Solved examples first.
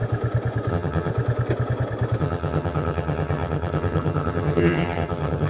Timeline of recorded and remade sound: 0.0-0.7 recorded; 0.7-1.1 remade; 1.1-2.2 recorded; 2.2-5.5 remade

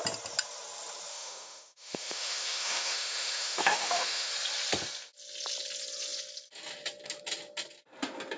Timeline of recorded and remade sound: 0.0-1.1 recorded; 1.1-4.3 remade; 4.3-8.4 recorded

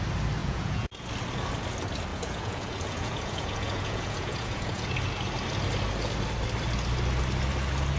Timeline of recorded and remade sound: 0.0-0.4 recorded; 0.4-1.1 remade; 1.1-2.1 recorded; 2.1-4.9 remade; 4.9-8.0 recorded